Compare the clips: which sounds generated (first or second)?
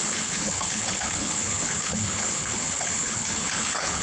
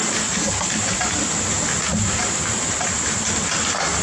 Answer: first